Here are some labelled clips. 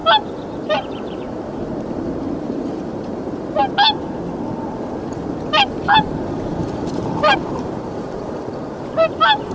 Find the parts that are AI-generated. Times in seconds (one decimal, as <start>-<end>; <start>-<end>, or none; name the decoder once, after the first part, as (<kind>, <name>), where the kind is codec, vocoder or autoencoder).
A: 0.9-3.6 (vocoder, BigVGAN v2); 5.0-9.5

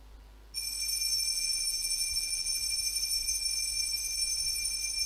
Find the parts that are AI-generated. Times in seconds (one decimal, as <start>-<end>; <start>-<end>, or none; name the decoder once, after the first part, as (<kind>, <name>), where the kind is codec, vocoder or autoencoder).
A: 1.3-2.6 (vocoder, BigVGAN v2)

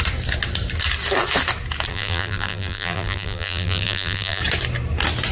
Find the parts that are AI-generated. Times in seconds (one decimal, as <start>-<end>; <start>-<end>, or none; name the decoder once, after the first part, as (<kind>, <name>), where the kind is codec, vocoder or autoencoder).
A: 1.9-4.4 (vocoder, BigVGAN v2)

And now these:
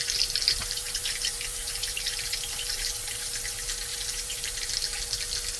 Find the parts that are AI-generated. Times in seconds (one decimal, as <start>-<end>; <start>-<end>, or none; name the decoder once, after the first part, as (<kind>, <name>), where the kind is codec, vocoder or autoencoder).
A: 0.6-3.3 (vocoder, BigVGAN v2); 3.9-4.7